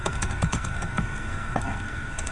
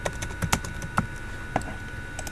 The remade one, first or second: first